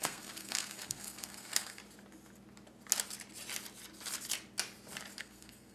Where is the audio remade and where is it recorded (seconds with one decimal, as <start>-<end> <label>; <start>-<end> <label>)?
0.0-1.8 remade; 1.8-5.2 recorded; 5.2-5.7 remade